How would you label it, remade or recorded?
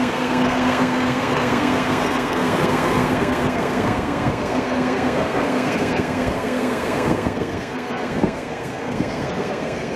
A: remade